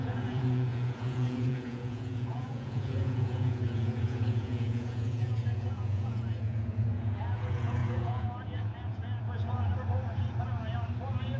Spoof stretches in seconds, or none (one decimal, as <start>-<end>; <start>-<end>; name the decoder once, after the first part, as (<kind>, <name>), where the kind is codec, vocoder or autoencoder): 0.0-9.7 (vocoder, Vocos)

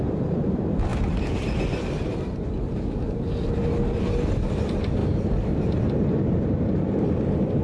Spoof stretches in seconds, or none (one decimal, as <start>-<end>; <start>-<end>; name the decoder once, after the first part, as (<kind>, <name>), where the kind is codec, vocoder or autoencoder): none